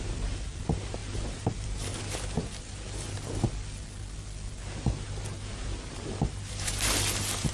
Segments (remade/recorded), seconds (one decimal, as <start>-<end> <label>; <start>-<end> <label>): 0.0-1.0 recorded; 1.0-2.5 remade; 2.5-7.5 recorded